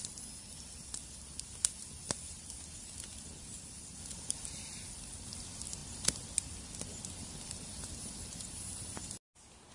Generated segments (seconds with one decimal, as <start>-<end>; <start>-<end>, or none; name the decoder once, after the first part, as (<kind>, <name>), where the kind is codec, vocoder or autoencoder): none